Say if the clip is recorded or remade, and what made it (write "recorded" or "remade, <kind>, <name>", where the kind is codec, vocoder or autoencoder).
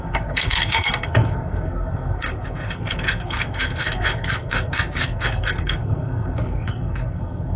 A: remade, codec, SNAC